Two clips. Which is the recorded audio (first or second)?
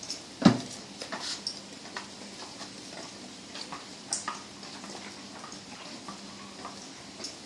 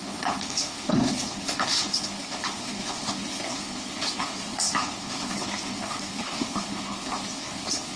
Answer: first